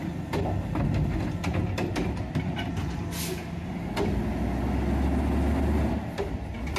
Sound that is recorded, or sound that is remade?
recorded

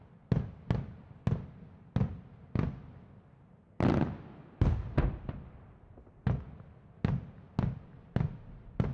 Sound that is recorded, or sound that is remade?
recorded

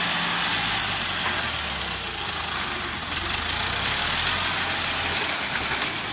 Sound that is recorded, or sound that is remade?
recorded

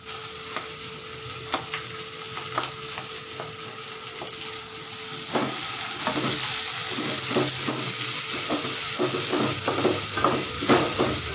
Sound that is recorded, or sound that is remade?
recorded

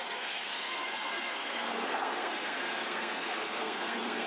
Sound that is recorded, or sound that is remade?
remade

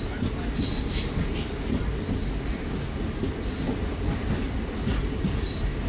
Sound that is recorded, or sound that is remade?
recorded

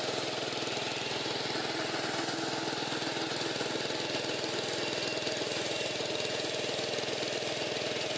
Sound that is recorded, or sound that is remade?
recorded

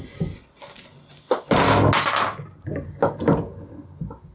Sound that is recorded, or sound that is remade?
recorded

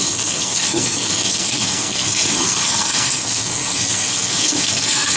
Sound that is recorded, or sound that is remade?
remade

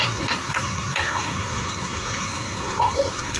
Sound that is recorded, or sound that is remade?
remade